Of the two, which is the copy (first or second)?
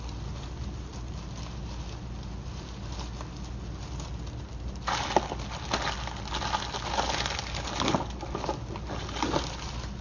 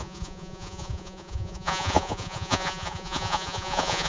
second